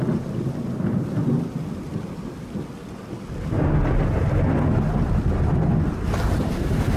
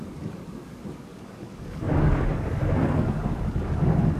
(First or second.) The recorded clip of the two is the first